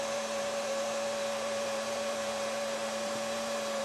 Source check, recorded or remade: remade